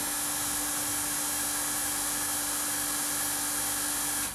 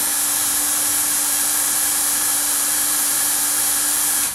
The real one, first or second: first